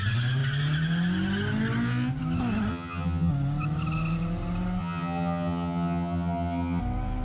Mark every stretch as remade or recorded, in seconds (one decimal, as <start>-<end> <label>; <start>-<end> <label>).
0.0-2.7 recorded; 2.7-3.3 remade; 3.3-4.8 recorded; 4.8-6.8 remade; 6.8-7.2 recorded